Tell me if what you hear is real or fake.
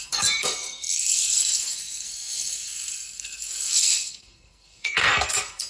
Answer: fake